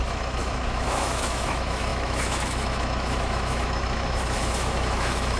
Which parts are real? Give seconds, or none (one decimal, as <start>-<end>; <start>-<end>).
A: none